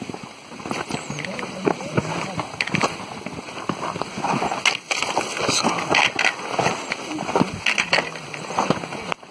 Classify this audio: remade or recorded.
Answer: recorded